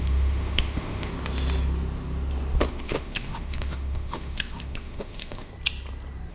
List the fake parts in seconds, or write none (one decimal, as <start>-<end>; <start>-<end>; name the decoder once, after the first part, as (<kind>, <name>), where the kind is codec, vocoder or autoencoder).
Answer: 0.0-1.1 (autoencoder, DAC-VAE); 2.7-5.5